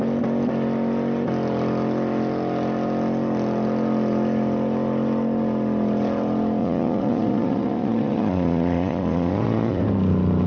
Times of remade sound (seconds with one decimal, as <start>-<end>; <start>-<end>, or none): 6.6-9.8